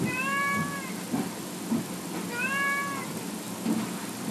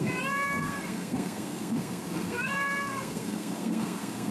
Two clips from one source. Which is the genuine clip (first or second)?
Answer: first